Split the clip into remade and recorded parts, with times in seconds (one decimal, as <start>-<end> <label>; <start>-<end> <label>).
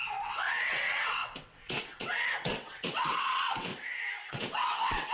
0.0-3.7 remade; 3.7-4.3 recorded; 4.3-5.1 remade